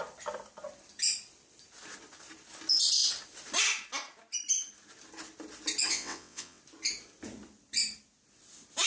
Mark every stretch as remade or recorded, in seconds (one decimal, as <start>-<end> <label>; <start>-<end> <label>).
0.0-5.9 recorded; 5.9-6.6 remade; 6.6-8.9 recorded